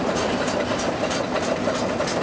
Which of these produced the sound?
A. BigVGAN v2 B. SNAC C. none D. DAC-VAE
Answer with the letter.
C